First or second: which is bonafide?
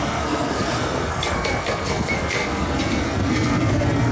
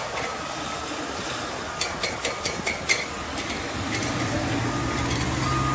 second